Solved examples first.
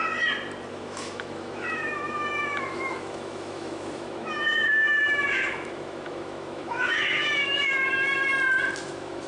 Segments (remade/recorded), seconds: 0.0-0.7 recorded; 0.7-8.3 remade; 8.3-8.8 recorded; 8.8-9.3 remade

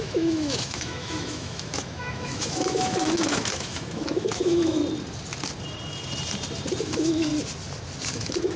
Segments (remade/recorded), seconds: 0.0-4.8 remade; 4.8-6.8 recorded; 6.8-7.3 remade; 7.3-8.1 recorded; 8.1-8.6 remade

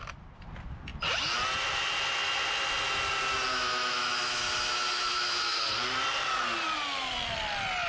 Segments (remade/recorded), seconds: 0.0-3.5 recorded; 3.5-5.7 remade; 5.7-7.9 recorded

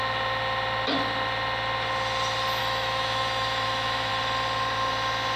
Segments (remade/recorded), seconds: 0.0-2.6 recorded; 2.6-4.1 remade; 4.1-5.4 recorded

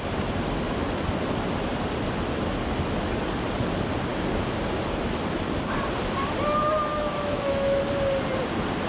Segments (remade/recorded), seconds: 0.0-6.9 recorded; 6.9-7.8 remade; 7.8-8.9 recorded

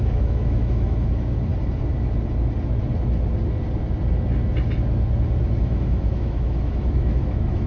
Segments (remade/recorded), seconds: 0.0-1.5 remade; 1.5-5.6 recorded; 5.6-7.7 remade